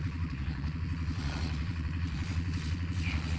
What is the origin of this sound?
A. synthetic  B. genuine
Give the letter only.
A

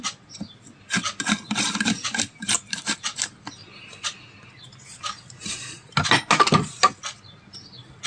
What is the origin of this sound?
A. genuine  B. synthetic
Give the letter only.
A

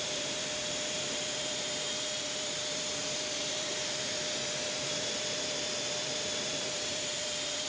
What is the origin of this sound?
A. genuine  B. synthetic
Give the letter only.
B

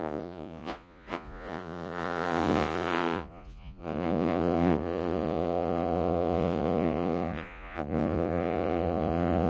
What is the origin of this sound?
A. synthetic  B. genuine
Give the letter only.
A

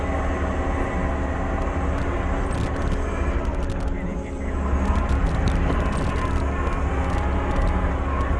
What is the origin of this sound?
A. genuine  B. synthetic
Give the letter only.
A